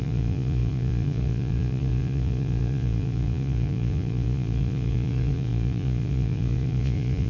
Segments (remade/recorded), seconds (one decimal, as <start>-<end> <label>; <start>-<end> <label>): 0.0-7.3 remade